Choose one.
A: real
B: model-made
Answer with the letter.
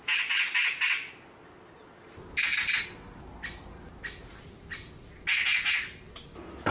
A